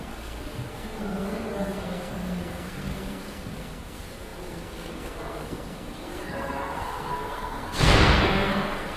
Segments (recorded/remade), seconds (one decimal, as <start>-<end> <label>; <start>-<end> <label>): 0.0-9.0 remade